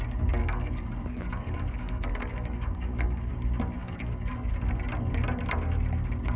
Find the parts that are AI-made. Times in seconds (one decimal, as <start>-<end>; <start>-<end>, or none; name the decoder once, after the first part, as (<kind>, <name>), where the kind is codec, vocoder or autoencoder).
0.4-3.3 (codec, DAC); 3.8-4.5